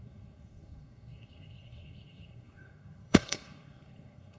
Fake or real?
fake